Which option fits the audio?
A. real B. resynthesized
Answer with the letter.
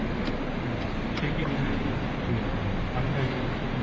A